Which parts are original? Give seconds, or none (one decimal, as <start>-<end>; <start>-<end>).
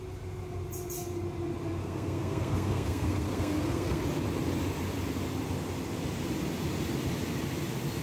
0.0-1.8; 4.0-8.0